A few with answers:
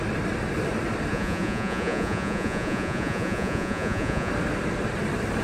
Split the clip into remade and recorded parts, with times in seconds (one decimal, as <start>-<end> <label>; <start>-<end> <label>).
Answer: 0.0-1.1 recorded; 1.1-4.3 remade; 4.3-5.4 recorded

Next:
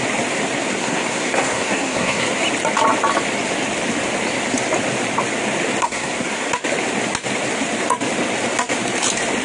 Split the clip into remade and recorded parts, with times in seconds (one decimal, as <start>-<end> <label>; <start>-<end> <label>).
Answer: 0.0-0.8 recorded; 0.8-2.3 remade; 2.3-5.8 recorded; 5.8-6.5 remade; 6.5-9.4 recorded

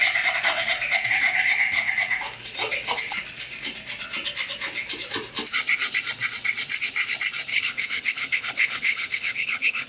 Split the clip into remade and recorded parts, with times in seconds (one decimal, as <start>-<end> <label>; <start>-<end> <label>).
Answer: 0.0-7.5 recorded; 7.5-9.9 remade

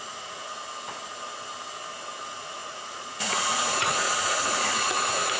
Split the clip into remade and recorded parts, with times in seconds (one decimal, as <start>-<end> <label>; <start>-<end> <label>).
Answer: 0.0-0.6 remade; 0.6-2.2 recorded; 2.2-5.4 remade

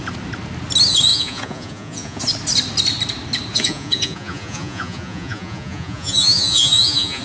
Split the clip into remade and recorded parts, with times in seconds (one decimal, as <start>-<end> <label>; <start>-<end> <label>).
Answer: 0.0-1.1 recorded; 1.1-2.2 remade; 2.2-3.5 recorded; 3.5-7.2 remade

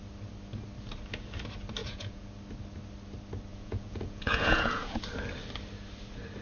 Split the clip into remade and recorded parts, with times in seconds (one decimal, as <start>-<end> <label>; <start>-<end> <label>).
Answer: 0.0-1.8 recorded; 1.8-2.3 remade; 2.3-3.5 recorded; 3.5-5.0 remade; 5.0-6.4 recorded

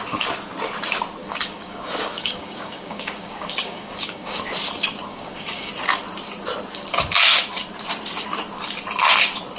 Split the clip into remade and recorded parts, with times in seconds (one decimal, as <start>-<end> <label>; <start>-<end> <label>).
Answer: 0.0-1.2 recorded; 1.2-4.5 remade; 4.5-5.1 recorded; 5.1-5.7 remade; 5.7-9.6 recorded